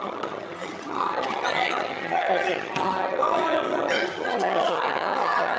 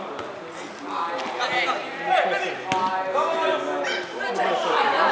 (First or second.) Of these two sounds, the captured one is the second